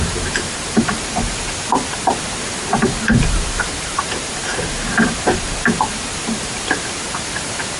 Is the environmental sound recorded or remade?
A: remade